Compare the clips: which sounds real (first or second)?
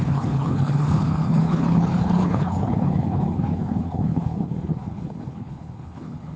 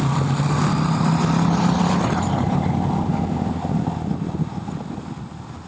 second